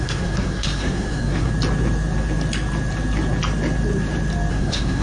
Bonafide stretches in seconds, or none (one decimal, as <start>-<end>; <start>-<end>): 1.5-4.5

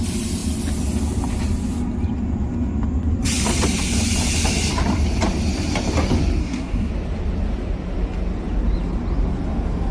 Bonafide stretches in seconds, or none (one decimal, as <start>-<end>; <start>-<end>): 0.0-6.4; 6.9-9.9